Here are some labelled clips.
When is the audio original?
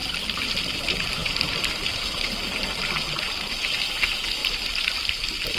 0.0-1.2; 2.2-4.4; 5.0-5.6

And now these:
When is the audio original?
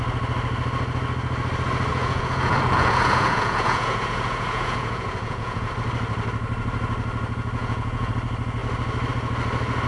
0.0-1.9; 5.7-7.6; 8.1-9.9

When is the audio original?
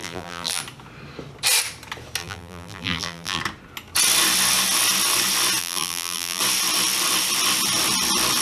0.6-2.2; 3.4-5.6; 6.4-8.4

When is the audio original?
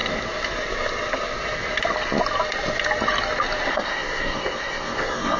0.0-3.7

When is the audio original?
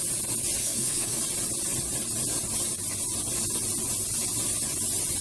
0.0-0.6; 1.2-5.2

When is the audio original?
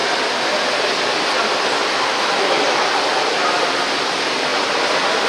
0.0-2.1; 2.6-5.3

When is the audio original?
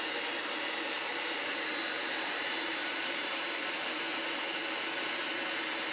0.0-0.4; 3.9-5.9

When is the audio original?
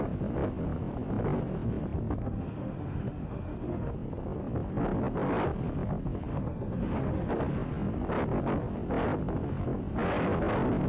0.0-2.2; 3.9-6.3; 7.3-10.9